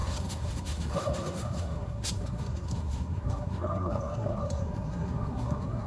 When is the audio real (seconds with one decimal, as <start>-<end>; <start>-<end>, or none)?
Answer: none